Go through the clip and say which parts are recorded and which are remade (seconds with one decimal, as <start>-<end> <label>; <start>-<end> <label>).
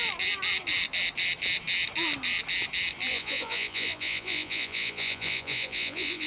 0.0-3.1 recorded; 3.1-6.3 remade